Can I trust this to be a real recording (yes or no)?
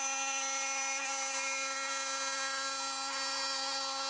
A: yes